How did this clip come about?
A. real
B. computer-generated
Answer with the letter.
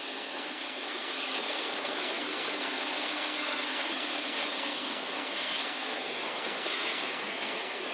B